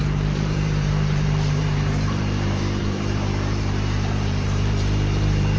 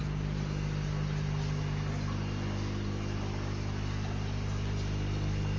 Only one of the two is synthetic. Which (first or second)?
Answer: first